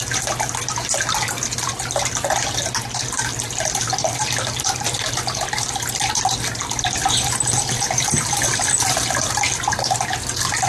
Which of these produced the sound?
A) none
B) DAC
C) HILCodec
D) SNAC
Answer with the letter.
A